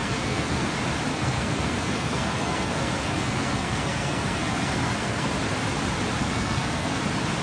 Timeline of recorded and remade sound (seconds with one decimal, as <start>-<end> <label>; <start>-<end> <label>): 0.0-0.7 remade; 0.7-1.1 recorded; 1.1-5.3 remade; 5.3-6.2 recorded; 6.2-7.0 remade; 7.0-7.4 recorded